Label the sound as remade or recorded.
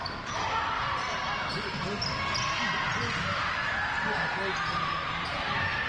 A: recorded